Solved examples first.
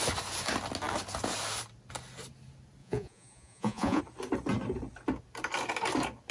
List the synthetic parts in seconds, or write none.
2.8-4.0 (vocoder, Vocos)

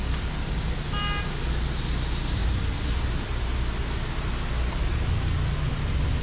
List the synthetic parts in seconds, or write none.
none

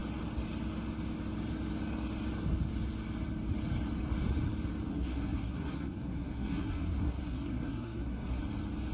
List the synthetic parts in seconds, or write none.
4.9-8.4 (codec, SNAC)

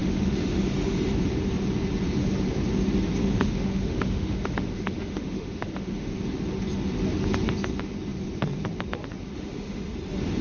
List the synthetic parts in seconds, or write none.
0.0-1.2 (autoencoder, DAC-VAE); 3.2-6.1; 9.3-9.9

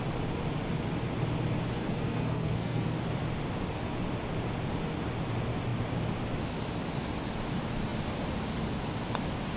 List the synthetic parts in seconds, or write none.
1.8-3.0 (codec, SNAC)

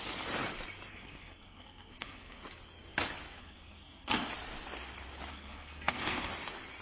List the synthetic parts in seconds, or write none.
0.9-2.4 (codec, SNAC); 3.4-4.3; 5.3-6.3